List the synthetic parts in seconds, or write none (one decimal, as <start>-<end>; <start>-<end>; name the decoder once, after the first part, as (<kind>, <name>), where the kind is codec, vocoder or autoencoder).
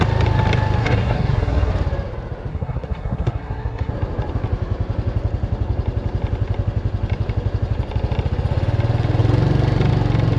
0.8-1.7 (codec, SNAC); 2.5-3.9